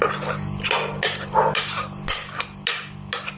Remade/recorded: recorded